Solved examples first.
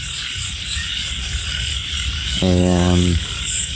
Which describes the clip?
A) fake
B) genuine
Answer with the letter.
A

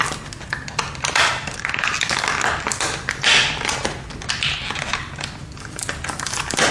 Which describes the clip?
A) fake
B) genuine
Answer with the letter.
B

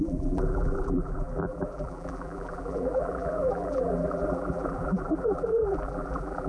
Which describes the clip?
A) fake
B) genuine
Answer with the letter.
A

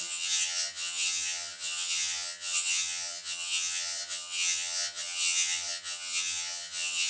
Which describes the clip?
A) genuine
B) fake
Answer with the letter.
B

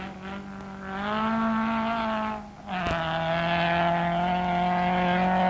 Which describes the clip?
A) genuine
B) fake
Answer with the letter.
A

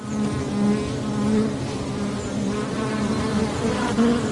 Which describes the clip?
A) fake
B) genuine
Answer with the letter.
B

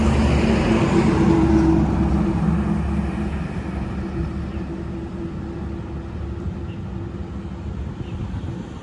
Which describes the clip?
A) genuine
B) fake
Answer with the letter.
A